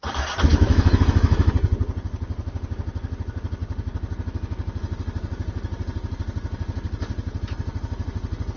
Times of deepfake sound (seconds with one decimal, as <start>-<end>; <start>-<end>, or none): 0.5-1.5